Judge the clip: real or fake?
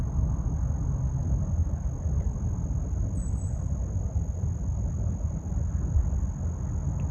real